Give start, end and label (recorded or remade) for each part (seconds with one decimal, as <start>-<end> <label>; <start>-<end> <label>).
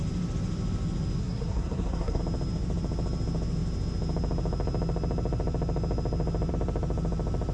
0.0-1.2 recorded; 1.2-2.2 remade; 2.2-7.5 recorded